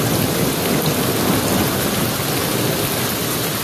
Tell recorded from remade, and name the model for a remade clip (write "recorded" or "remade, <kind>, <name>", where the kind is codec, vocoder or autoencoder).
recorded